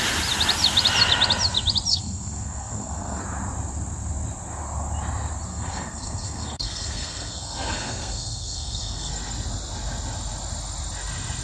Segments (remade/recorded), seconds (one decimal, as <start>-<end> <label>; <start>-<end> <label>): 0.0-1.9 recorded; 1.9-3.2 remade; 3.2-5.5 recorded; 5.5-9.1 remade; 9.1-11.4 recorded